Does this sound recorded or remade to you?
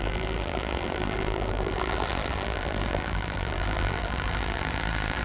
remade